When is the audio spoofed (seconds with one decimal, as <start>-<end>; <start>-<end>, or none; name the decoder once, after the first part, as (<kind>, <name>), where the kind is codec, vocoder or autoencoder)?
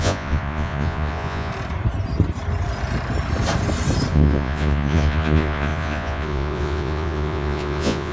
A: 0.0-1.5 (vocoder, Vocos); 4.1-8.1